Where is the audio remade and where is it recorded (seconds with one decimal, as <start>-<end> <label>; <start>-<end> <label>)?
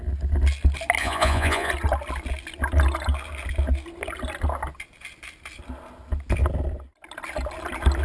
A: 0.0-1.0 recorded; 1.0-1.7 remade; 1.7-8.0 recorded